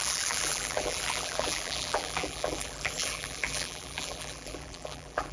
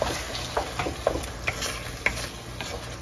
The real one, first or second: second